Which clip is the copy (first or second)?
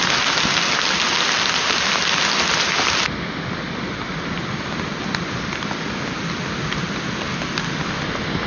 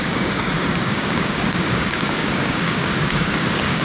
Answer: second